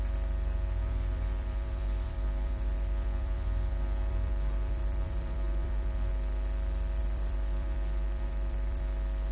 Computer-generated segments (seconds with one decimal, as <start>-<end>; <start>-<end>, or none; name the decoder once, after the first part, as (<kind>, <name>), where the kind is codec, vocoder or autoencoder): 0.8-6.1 (vocoder, BigVGAN v2); 7.0-8.8